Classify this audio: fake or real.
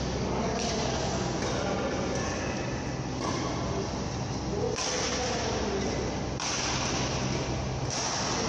real